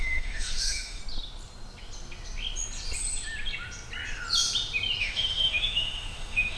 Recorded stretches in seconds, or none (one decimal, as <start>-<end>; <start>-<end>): 1.0-5.0